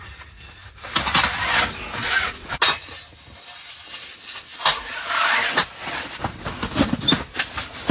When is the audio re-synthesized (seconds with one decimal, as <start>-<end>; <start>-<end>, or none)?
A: 2.0-2.5; 4.1-5.0